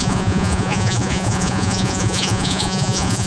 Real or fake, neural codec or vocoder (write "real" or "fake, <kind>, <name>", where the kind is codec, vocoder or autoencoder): fake, vocoder, Vocos